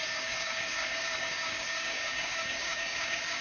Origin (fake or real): fake